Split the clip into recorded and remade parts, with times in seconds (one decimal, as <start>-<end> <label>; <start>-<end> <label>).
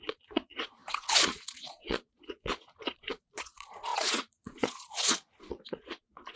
0.0-6.4 remade